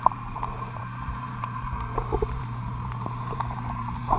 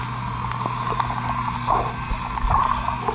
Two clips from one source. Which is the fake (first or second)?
first